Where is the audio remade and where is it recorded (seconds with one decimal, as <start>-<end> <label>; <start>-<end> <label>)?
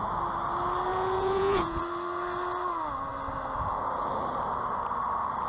0.0-0.9 recorded; 0.9-1.8 remade; 1.8-5.5 recorded